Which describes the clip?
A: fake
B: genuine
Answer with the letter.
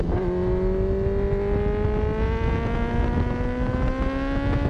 B